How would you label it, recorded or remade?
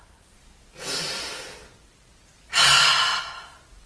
recorded